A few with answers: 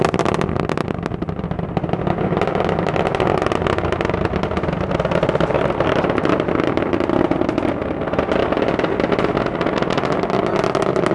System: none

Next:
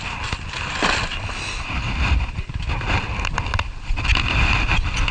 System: none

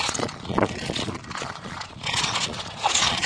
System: vocoder, Vocos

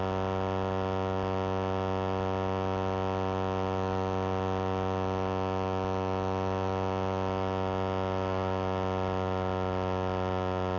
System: none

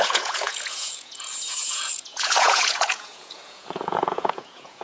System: vocoder, Vocos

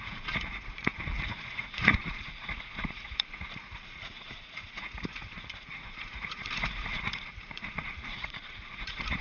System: vocoder, Vocos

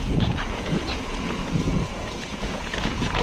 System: vocoder, Vocos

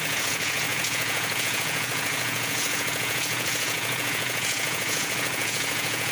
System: vocoder, Vocos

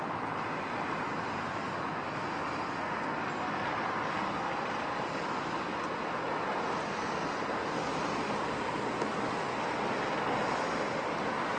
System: none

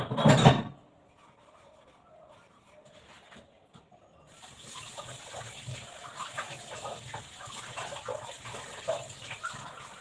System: none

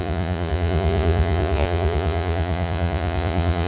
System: vocoder, Vocos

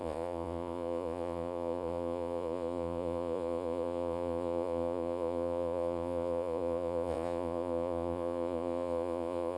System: vocoder, Vocos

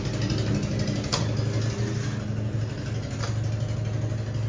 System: none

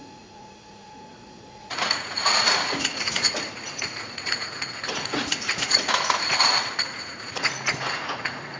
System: vocoder, Vocos